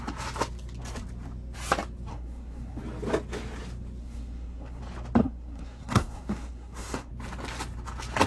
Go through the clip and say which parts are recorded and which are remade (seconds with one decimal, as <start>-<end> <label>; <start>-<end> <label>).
0.0-2.1 recorded; 2.1-2.8 remade; 2.8-4.0 recorded; 4.0-4.8 remade; 4.8-5.2 recorded; 5.2-7.1 remade; 7.1-8.3 recorded